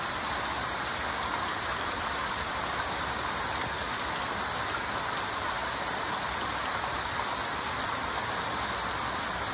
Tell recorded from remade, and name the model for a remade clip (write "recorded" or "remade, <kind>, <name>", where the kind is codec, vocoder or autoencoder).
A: recorded